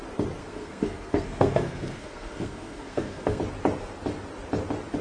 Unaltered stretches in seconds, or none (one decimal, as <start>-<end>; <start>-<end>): 0.0-0.4; 3.4-5.0